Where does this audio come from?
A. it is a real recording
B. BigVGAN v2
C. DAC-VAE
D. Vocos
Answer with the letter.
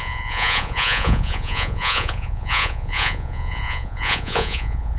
D